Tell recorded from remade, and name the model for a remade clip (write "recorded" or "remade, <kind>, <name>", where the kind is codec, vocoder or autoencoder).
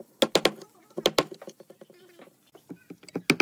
recorded